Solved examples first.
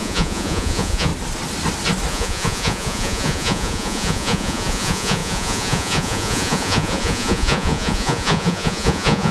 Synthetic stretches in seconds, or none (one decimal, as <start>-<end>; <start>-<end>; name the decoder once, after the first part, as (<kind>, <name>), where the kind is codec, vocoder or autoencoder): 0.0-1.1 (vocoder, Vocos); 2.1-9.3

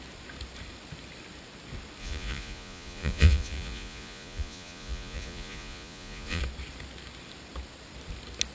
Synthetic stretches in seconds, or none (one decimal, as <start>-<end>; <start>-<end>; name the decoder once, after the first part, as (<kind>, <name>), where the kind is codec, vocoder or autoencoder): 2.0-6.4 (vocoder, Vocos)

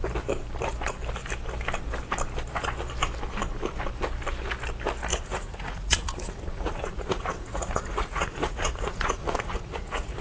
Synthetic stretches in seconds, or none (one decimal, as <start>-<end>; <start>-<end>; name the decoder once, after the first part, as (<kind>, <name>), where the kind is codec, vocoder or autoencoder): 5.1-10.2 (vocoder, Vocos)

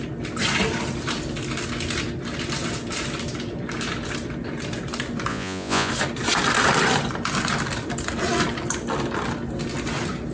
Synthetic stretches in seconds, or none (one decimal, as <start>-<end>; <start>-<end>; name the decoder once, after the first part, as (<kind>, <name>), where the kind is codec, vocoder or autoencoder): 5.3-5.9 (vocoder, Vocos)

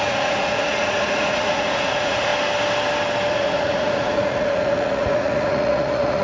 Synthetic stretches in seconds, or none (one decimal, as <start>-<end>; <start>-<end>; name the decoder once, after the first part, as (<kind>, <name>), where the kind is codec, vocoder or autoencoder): 0.0-2.3 (vocoder, Vocos); 3.3-6.2

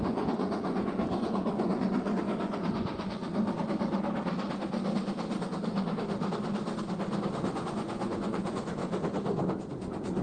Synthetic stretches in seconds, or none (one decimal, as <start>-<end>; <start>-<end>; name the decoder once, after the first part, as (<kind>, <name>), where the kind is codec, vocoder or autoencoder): 0.0-3.2 (vocoder, Vocos); 7.5-8.8; 9.7-10.2